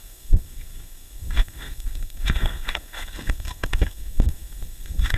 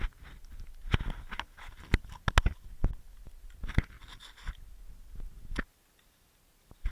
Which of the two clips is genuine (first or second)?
second